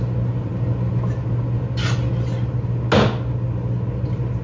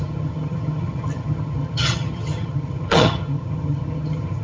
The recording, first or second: first